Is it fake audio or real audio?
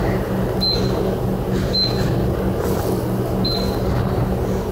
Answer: real